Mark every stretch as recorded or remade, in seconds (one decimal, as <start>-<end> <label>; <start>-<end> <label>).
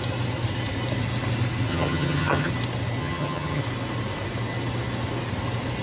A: 0.0-1.7 recorded; 1.7-2.5 remade; 2.5-3.0 recorded; 3.0-3.6 remade; 3.6-5.8 recorded